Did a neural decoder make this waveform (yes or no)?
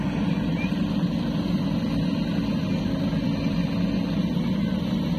no